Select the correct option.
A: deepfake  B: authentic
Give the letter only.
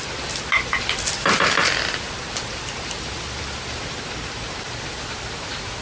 B